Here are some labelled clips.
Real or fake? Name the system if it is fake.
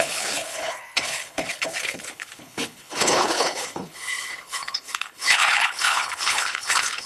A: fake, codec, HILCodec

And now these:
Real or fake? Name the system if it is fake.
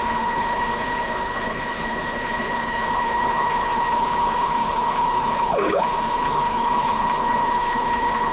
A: fake, codec, HILCodec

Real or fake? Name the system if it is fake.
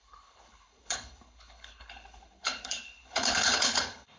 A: fake, codec, HILCodec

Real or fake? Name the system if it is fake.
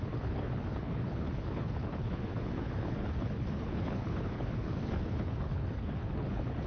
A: fake, codec, HILCodec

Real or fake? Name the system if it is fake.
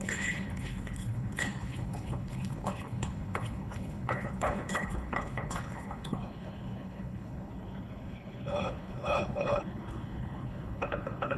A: fake, codec, HILCodec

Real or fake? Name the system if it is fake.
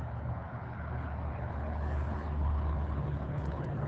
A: fake, codec, HILCodec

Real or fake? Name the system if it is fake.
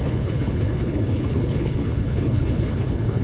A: fake, codec, HILCodec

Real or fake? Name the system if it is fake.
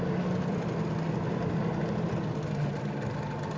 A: real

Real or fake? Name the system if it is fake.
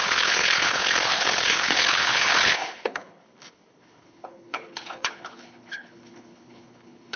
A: fake, codec, HILCodec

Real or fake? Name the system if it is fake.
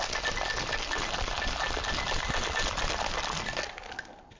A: real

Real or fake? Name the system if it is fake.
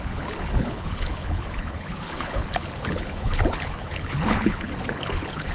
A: fake, codec, HILCodec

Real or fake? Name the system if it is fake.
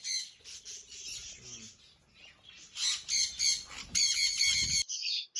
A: real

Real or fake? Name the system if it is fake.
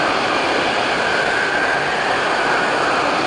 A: real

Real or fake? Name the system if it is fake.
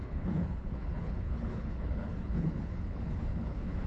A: fake, codec, HILCodec